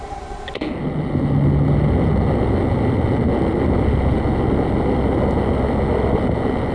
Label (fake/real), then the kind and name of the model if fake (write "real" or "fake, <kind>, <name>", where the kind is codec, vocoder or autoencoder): real